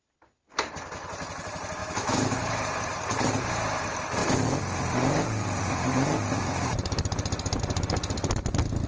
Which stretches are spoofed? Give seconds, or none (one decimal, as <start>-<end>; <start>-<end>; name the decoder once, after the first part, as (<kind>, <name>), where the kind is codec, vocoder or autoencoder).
1.8-2.5 (autoencoder, DAC-VAE)